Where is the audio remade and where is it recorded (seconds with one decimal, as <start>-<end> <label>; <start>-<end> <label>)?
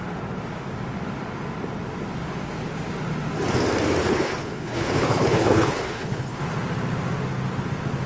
0.0-4.0 recorded; 4.0-6.4 remade; 6.4-8.1 recorded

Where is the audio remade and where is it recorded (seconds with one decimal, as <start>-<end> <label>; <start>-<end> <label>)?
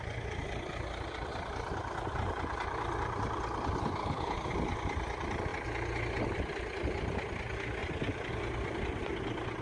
0.0-4.0 recorded; 4.0-4.5 remade; 4.5-9.6 recorded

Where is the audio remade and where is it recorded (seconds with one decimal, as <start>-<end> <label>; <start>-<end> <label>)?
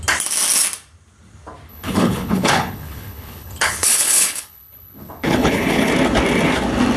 0.0-1.7 recorded; 1.7-5.9 remade; 5.9-7.0 recorded